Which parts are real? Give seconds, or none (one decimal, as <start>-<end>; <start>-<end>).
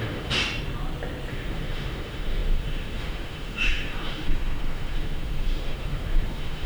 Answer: 0.4-1.3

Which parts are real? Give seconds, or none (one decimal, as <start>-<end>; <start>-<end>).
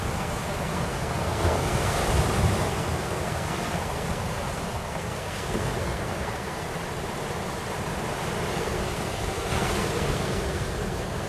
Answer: 2.0-2.6; 6.7-8.5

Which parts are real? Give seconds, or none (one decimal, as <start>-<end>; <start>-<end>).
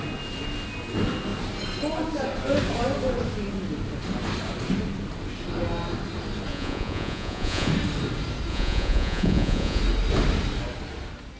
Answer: 0.0-6.5; 7.7-8.5; 9.8-11.4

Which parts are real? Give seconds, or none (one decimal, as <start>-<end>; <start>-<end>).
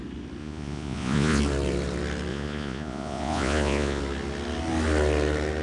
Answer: 0.0-0.4; 1.4-2.3; 4.0-5.6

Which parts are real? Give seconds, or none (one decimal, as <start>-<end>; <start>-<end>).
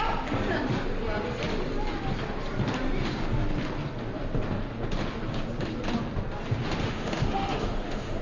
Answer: 0.0-6.8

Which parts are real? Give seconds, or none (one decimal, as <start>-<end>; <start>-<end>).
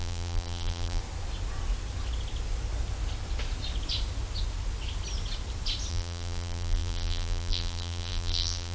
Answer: 1.0-5.9